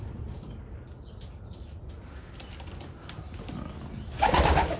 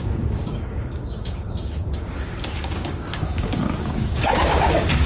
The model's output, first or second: second